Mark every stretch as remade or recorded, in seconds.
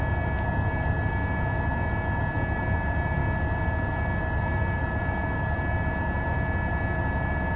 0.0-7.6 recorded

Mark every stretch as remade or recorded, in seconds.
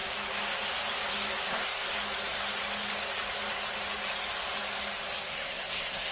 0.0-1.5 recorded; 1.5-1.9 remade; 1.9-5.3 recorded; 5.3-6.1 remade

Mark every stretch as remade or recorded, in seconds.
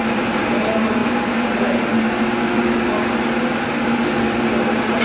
0.0-5.0 recorded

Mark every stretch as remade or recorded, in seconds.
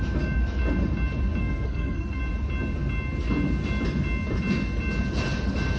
0.0-1.4 recorded; 1.4-2.2 remade; 2.2-5.8 recorded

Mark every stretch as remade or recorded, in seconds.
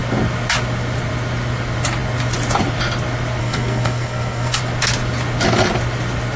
0.0-3.4 recorded; 3.4-4.6 remade; 4.6-6.4 recorded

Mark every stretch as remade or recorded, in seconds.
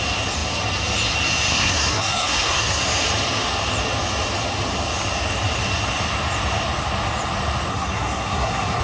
0.0-1.5 recorded; 1.5-2.8 remade; 2.8-7.7 recorded; 7.7-8.8 remade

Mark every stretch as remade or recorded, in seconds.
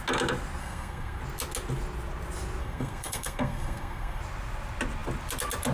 0.0-0.6 recorded; 0.6-1.2 remade; 1.2-2.6 recorded; 2.6-4.2 remade; 4.2-5.7 recorded